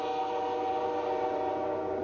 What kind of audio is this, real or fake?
real